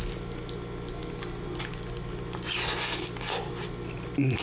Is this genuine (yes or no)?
yes